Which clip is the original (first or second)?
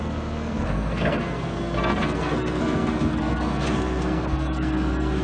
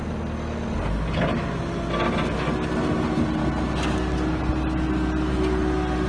second